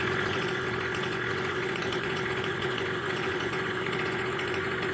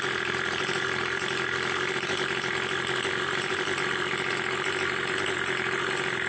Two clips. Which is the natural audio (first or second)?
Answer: second